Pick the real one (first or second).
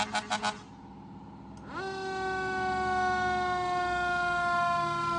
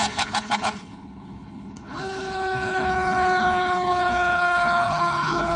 first